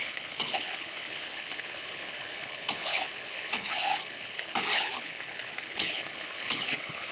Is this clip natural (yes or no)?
no